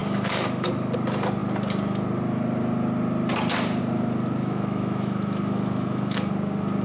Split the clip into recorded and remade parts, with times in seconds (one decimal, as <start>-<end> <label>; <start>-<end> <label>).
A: 0.0-0.7 remade; 0.7-4.4 recorded; 4.4-6.3 remade; 6.3-6.8 recorded